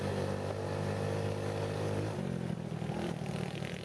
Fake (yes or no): no